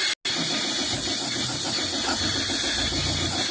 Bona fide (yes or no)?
yes